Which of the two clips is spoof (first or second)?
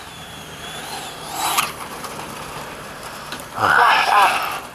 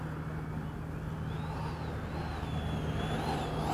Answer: first